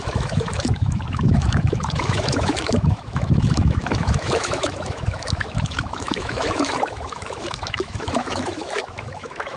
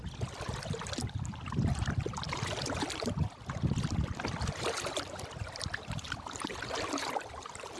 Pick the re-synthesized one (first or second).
first